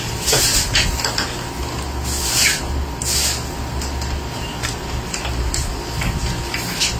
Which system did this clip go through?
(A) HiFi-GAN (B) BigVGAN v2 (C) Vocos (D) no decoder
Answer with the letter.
D